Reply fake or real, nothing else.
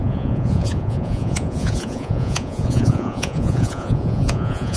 fake